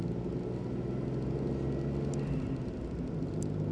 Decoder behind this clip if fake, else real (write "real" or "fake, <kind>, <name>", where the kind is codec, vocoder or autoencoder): real